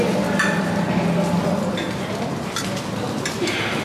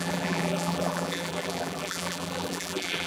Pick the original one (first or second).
first